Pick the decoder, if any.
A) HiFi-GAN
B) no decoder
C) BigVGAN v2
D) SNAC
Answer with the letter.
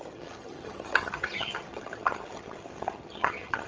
A